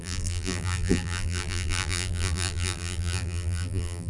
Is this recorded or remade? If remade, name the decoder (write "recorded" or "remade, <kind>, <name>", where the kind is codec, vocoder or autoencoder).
remade, vocoder, BigVGAN v2